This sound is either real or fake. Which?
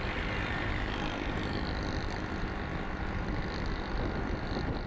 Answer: real